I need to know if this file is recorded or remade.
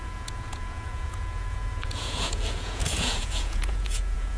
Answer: remade